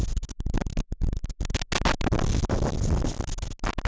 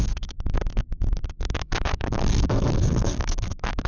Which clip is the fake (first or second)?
second